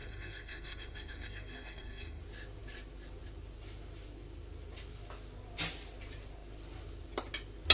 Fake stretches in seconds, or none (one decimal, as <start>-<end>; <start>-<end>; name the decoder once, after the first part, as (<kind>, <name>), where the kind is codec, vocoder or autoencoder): 0.0-2.2 (codec, SNAC)